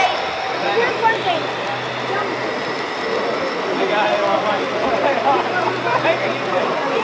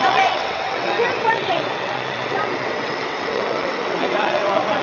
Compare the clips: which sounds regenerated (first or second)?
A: second